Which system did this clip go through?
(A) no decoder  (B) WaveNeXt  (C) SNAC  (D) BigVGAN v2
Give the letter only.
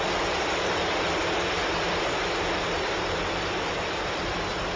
D